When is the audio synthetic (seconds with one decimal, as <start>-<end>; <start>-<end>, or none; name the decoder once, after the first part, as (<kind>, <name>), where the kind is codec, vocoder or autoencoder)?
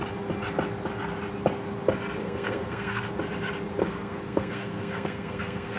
2.2-3.1 (codec, SNAC); 3.8-5.8